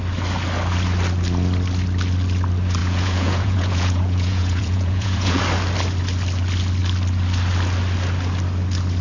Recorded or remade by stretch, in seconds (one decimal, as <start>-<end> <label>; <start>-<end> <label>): 0.0-2.8 recorded; 2.8-5.4 remade; 5.4-9.0 recorded